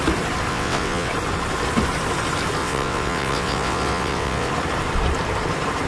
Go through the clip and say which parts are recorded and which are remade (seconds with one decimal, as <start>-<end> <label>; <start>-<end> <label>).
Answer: 0.0-0.5 recorded; 0.5-1.1 remade; 1.1-2.6 recorded; 2.6-4.5 remade; 4.5-5.9 recorded